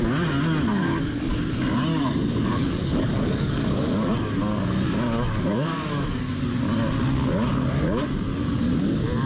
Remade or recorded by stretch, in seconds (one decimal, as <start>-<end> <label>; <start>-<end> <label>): 0.0-1.9 recorded; 1.9-4.1 remade; 4.1-5.5 recorded; 5.5-6.3 remade; 6.3-9.3 recorded